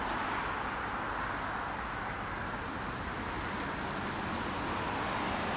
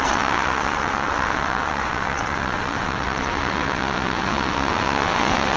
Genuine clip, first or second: first